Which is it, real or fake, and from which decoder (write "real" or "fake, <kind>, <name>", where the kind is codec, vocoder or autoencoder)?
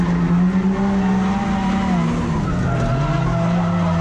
real